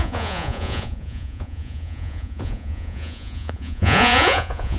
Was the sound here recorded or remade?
remade